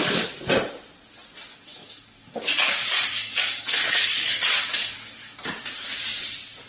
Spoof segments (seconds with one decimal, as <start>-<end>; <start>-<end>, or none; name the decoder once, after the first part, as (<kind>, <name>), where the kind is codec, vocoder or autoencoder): 1.5-5.5 (codec, DAC)